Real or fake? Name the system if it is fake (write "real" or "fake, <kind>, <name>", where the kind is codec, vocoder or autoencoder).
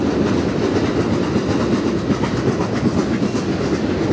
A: real